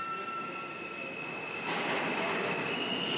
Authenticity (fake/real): real